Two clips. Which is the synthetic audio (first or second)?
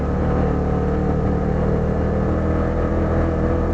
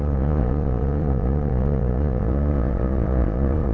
second